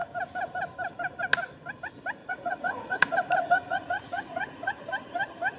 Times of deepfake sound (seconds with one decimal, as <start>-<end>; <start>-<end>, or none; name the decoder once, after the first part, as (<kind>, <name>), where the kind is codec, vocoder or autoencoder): 2.2-4.8 (vocoder, Vocos)